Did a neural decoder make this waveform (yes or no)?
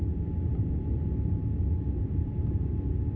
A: no